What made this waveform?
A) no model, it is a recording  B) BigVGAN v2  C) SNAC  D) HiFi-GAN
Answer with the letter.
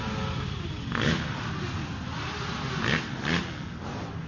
A